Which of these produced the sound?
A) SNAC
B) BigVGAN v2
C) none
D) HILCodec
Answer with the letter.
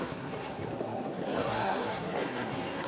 A